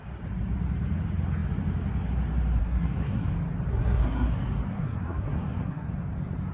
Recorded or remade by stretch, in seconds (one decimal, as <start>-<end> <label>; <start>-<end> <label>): 0.0-2.6 recorded; 2.6-3.3 remade; 3.3-3.7 recorded; 3.7-4.3 remade; 4.3-4.7 recorded; 4.7-5.9 remade; 5.9-6.5 recorded